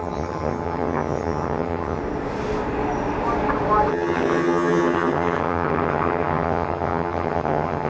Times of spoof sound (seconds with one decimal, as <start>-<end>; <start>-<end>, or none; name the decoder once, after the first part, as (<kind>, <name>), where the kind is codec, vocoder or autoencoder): 0.0-2.0 (vocoder, HiFi-GAN); 3.9-7.9